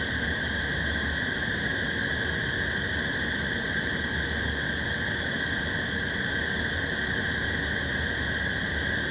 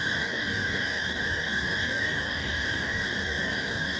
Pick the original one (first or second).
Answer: first